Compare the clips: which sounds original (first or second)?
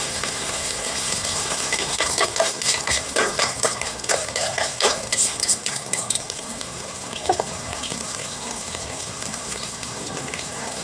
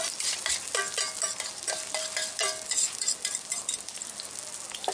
second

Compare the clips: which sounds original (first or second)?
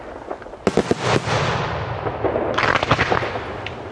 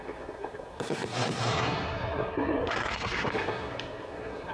first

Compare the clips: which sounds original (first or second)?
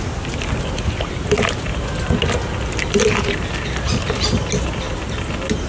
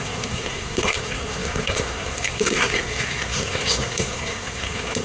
first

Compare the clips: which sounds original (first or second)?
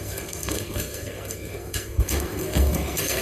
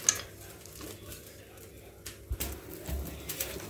second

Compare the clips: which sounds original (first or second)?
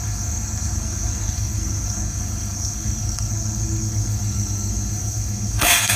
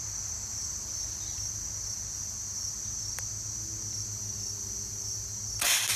second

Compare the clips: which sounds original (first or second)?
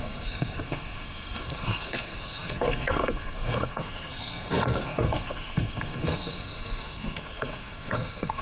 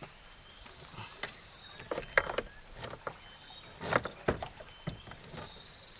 second